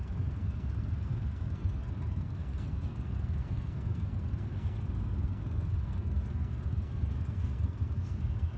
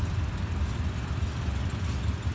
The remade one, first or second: first